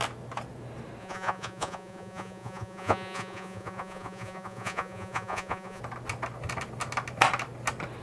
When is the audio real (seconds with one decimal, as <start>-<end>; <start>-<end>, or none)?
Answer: 0.0-1.0; 5.8-8.0